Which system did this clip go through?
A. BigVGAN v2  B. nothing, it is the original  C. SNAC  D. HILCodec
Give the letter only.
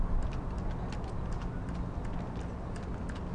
B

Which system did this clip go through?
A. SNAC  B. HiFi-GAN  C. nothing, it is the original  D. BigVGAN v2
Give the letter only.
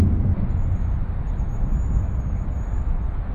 C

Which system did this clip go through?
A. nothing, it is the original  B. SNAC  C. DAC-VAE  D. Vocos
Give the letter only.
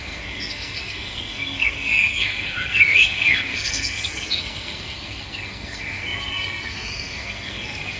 B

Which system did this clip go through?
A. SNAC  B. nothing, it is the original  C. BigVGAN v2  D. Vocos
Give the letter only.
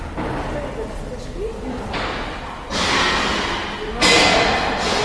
B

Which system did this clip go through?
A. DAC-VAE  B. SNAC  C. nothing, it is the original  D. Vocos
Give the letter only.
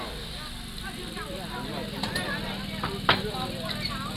C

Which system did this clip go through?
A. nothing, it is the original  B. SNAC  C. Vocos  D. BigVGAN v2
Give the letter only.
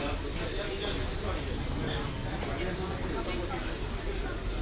A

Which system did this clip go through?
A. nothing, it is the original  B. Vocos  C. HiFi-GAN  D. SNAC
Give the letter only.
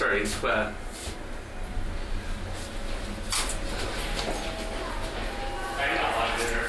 A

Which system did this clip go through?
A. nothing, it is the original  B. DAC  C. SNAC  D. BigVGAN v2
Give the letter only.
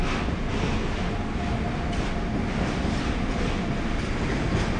A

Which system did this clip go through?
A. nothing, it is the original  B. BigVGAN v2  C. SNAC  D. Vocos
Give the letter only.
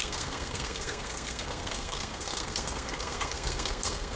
C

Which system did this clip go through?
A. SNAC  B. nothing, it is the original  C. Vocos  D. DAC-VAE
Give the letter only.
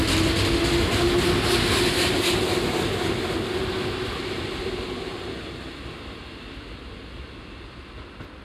B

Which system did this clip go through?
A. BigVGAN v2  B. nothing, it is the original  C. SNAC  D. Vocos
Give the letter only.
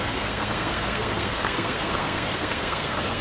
C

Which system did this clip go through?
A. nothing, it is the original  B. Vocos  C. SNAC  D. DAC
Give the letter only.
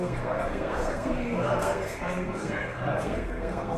C